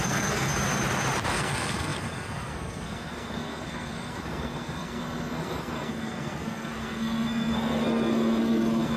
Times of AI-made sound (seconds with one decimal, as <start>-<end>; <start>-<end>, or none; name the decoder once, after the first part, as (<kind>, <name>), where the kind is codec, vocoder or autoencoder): 0.0-0.5 (codec, SNAC); 1.3-9.0